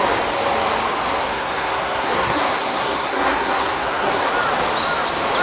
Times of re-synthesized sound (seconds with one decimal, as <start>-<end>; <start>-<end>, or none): 1.2-4.3